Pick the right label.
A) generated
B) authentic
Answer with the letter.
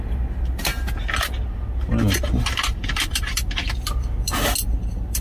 B